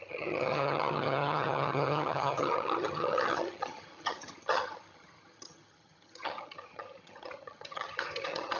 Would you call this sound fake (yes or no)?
yes